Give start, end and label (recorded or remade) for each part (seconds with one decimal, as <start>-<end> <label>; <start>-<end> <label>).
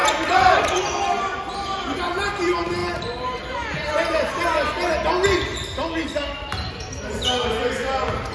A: 0.0-8.3 recorded